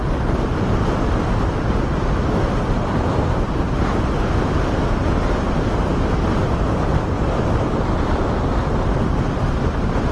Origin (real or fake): real